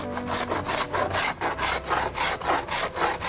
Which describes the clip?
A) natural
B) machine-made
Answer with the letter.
A